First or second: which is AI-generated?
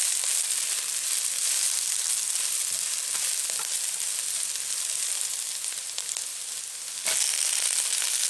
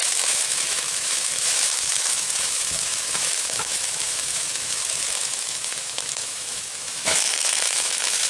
second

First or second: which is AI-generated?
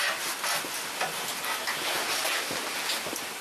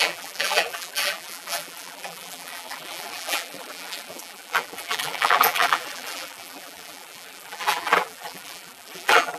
second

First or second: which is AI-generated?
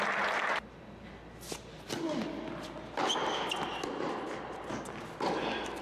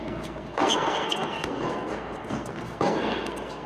second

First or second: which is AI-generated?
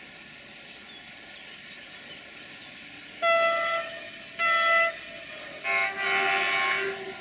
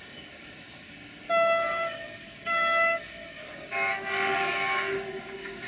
second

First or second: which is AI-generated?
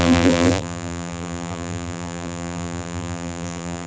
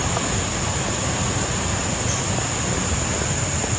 first